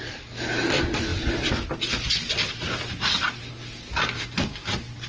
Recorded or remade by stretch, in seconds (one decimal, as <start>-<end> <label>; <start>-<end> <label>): 0.0-5.1 recorded